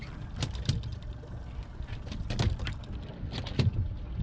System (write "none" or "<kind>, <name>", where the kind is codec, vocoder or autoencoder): none